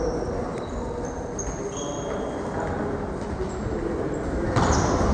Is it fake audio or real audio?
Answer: real